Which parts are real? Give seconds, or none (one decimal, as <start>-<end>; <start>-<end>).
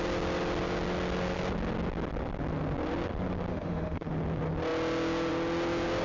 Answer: 0.0-3.5; 4.1-6.0